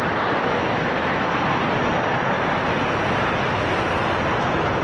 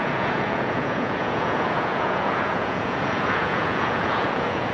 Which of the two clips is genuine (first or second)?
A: first